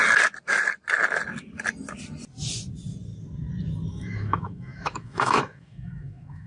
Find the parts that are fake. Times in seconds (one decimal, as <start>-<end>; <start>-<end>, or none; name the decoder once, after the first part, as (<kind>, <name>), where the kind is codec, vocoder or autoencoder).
3.9-6.5 (autoencoder, DAC-VAE)

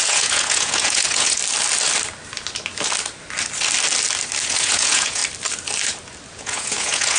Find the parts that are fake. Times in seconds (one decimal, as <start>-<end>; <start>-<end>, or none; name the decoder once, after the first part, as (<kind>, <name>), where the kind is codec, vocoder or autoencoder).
0.0-1.4 (vocoder, Vocos); 4.4-5.2; 6.3-7.2

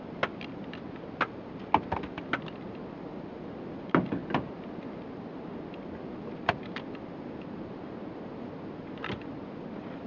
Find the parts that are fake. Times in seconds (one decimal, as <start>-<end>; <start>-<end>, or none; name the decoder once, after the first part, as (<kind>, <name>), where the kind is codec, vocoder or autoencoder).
none

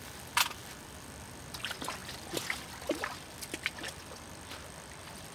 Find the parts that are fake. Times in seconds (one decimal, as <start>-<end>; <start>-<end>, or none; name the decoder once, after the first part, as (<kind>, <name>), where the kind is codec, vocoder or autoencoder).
none

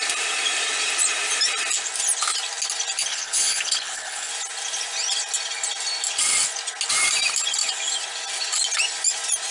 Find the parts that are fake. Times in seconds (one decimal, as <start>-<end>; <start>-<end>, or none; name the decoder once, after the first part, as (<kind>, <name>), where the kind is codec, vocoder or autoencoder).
3.1-4.3 (codec, HILCodec)

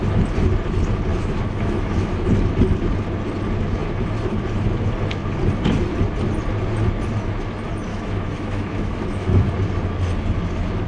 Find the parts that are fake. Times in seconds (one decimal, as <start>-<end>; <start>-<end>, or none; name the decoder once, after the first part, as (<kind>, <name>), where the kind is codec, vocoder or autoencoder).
1.1-2.3 (autoencoder, DAC-VAE); 7.9-9.5

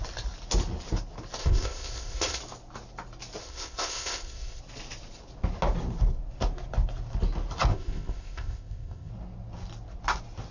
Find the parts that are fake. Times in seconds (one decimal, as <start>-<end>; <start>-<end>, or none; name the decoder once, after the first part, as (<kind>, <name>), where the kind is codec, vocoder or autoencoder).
1.4-2.4 (codec, ZipCodec); 3.4-4.6; 7.7-9.1